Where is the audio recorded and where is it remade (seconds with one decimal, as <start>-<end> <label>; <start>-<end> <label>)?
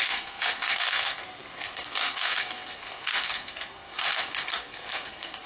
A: 0.0-5.5 remade